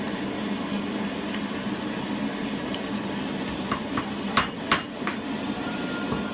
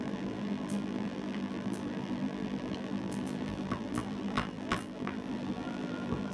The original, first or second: first